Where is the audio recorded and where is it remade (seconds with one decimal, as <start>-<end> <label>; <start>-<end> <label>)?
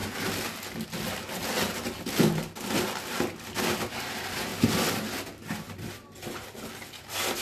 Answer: 0.0-7.4 recorded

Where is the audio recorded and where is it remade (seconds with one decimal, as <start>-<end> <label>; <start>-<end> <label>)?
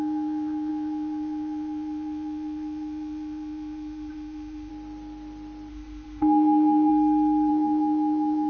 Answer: 0.0-4.7 remade; 4.7-5.7 recorded; 5.7-6.9 remade; 6.9-7.5 recorded; 7.5-8.5 remade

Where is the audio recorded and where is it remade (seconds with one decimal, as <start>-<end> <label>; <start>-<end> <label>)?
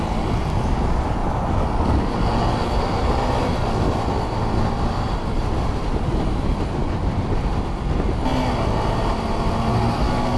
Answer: 0.0-9.7 recorded; 9.7-10.4 remade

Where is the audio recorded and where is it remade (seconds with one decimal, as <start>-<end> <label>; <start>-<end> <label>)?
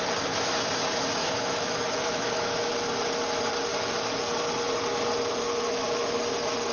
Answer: 0.0-1.2 recorded; 1.2-2.7 remade; 2.7-5.5 recorded; 5.5-6.1 remade; 6.1-6.7 recorded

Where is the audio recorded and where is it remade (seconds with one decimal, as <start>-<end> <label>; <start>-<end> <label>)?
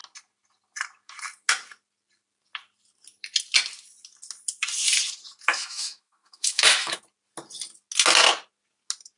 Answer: 0.0-5.5 recorded; 5.5-7.0 remade; 7.0-9.2 recorded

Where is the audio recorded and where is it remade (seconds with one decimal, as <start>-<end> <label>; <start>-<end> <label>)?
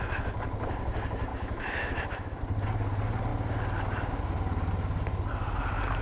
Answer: 0.0-1.3 recorded; 1.3-2.4 remade; 2.4-6.0 recorded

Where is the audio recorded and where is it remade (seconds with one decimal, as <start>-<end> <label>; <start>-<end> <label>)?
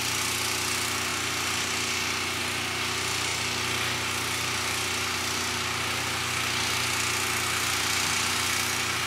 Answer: 0.0-9.1 recorded